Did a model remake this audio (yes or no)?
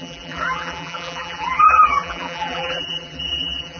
yes